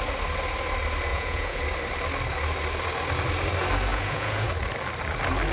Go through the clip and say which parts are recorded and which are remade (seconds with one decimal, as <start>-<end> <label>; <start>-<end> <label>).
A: 0.0-1.1 recorded; 1.1-1.6 remade; 1.6-3.9 recorded; 3.9-4.5 remade; 4.5-5.5 recorded